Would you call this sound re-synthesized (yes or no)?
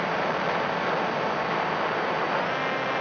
no